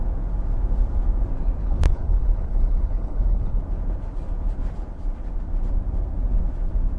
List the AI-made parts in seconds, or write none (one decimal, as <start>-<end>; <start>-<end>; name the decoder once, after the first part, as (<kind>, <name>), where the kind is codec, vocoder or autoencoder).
1.6-3.6 (codec, HILCodec)